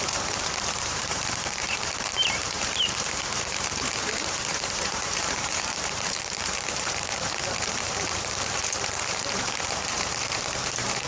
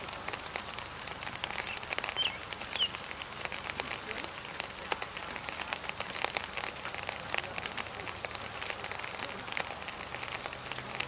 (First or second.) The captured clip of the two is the second